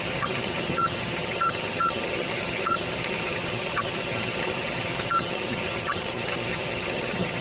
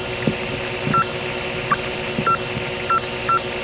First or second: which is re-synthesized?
first